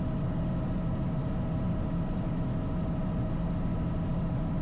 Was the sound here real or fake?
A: real